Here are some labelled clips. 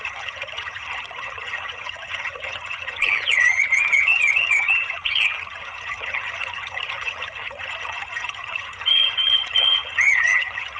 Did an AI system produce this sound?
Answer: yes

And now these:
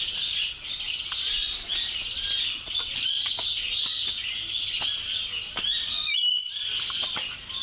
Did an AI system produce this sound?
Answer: no